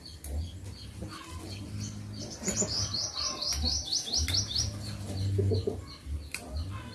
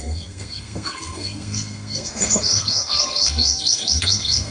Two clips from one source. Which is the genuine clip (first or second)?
first